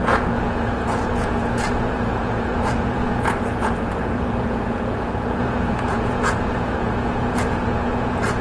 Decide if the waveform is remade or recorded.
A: remade